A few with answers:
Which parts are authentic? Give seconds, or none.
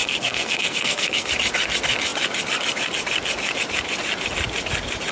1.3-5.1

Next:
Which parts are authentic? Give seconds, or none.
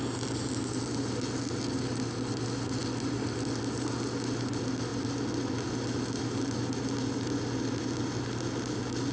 0.0-9.1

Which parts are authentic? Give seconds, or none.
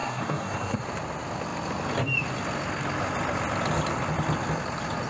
0.8-5.1